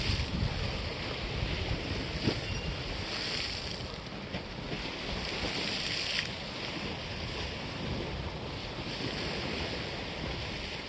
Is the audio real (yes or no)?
yes